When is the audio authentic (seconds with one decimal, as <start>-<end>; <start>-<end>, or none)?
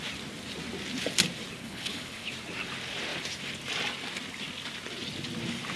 0.0-1.6; 2.3-5.8